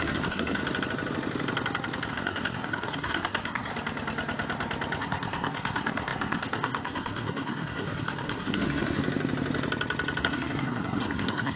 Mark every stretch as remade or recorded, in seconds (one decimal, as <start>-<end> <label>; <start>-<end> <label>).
0.0-0.6 remade; 0.6-2.1 recorded; 2.1-3.7 remade; 3.7-5.0 recorded; 5.0-9.0 remade; 9.0-10.2 recorded; 10.2-11.6 remade